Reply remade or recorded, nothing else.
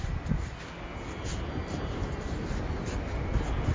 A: recorded